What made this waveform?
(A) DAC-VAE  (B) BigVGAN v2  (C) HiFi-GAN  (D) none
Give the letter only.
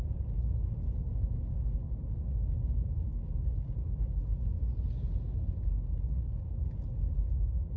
D